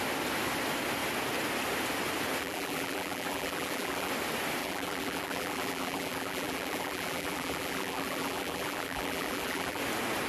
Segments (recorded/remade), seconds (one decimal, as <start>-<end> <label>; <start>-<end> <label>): 0.0-2.4 recorded; 2.4-4.1 remade; 4.1-4.6 recorded; 4.6-9.8 remade; 9.8-10.3 recorded